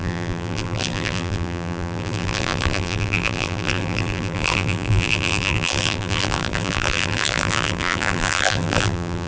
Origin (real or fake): fake